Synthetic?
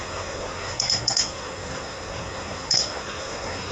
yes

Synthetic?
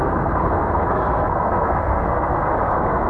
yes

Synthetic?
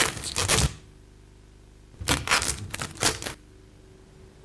no